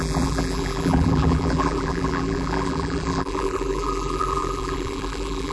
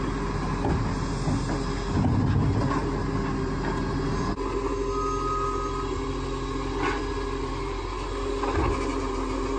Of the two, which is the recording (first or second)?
second